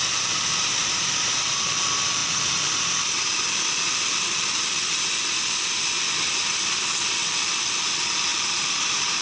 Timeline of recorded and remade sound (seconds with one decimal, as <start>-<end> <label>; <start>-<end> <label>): 0.0-0.8 recorded; 0.8-1.7 remade; 1.7-7.2 recorded; 7.2-7.8 remade; 7.8-8.3 recorded; 8.3-9.2 remade